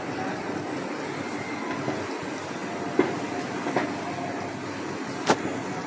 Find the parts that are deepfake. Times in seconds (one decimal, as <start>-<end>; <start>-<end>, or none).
none